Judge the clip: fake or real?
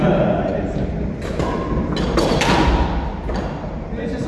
real